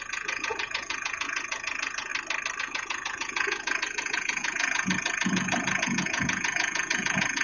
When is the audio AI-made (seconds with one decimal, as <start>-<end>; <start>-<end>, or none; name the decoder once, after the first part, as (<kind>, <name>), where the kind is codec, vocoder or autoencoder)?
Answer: 0.0-2.1 (vocoder, Vocos); 2.6-7.4